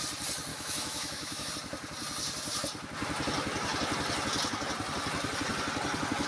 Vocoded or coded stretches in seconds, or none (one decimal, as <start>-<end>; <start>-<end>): 0.5-1.5